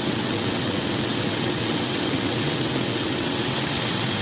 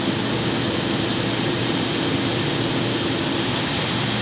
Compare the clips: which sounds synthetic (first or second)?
first